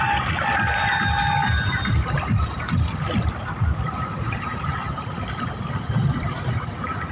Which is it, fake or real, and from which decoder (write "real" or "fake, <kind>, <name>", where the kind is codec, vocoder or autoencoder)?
fake, vocoder, BigVGAN v2